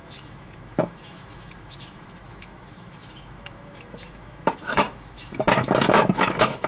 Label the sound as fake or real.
fake